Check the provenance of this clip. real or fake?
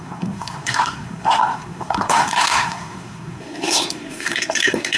fake